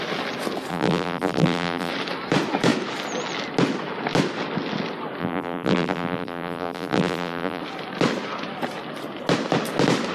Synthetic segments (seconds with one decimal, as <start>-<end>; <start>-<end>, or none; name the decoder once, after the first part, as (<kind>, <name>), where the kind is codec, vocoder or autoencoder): 0.7-1.9 (vocoder, BigVGAN v2); 5.2-7.6